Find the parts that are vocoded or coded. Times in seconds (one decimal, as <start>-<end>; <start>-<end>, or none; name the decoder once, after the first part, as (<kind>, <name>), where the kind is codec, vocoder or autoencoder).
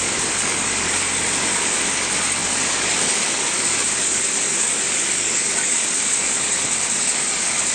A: 0.0-7.7 (codec, DAC)